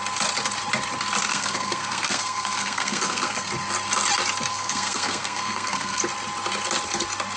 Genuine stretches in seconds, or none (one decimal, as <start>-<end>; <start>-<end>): 0.0-1.3; 3.5-4.5; 6.0-7.4